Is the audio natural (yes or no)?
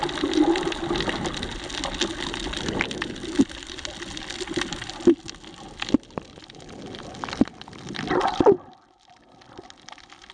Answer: yes